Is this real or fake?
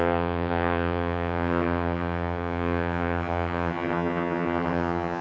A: fake